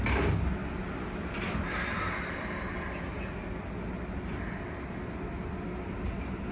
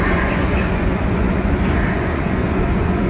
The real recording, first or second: first